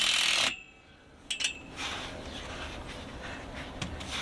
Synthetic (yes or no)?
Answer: no